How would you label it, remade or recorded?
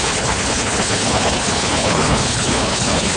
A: remade